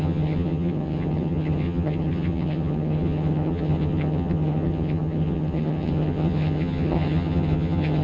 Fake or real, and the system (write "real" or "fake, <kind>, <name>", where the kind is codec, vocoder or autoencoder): fake, vocoder, HiFi-GAN